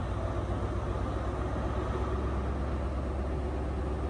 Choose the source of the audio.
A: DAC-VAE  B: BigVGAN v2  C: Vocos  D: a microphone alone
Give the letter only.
D